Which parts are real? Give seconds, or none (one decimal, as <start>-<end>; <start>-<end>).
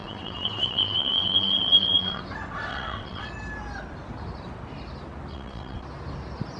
2.2-2.7; 3.3-5.3; 5.8-6.6